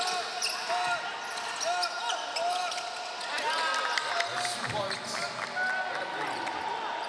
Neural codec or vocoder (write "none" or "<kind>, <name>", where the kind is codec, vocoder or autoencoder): none